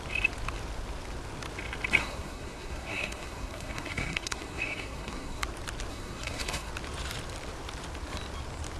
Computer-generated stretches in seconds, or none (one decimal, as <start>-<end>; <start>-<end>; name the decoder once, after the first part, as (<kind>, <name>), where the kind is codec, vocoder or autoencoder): 2.0-5.4 (codec, SNAC); 5.9-6.7